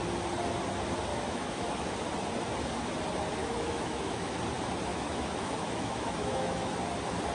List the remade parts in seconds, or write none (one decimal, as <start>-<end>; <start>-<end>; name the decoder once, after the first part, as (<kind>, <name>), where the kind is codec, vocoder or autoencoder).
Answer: 1.1-1.9 (autoencoder, DAC-VAE); 3.4-4.4; 4.9-6.7